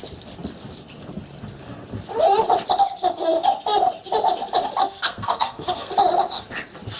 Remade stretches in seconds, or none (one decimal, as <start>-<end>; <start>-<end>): 4.8-5.9